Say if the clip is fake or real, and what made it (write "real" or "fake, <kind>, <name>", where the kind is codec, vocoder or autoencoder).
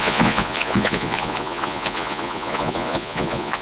fake, vocoder, Vocos